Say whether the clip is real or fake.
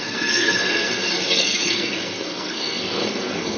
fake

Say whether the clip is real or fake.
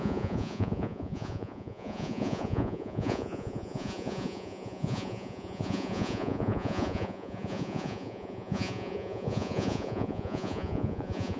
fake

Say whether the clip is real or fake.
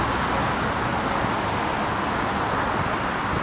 real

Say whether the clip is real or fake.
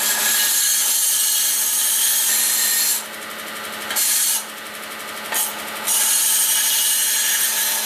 real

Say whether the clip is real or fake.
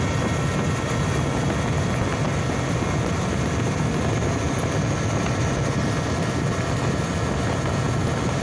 real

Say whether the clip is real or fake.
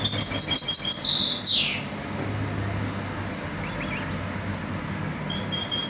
real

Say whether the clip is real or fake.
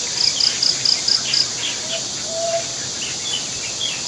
real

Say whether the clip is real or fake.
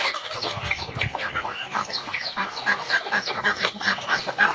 fake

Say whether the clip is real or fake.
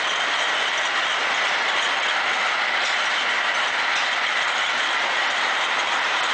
real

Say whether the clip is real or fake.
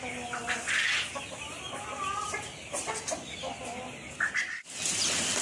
real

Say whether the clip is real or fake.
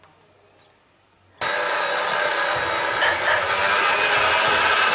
real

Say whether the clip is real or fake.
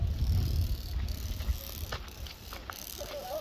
real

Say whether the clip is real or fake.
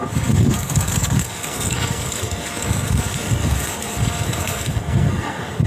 fake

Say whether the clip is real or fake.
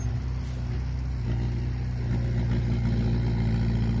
real